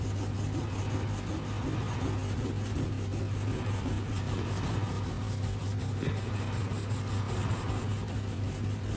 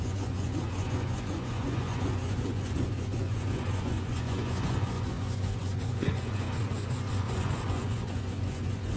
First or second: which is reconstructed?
second